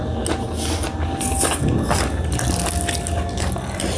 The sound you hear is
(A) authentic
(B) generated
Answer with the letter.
A